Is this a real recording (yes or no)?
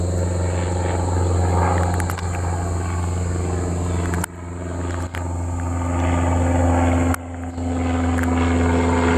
yes